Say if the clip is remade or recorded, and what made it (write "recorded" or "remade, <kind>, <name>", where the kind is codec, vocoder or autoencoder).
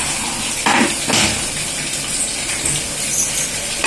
recorded